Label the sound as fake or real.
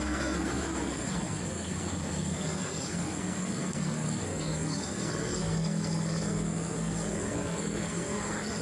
fake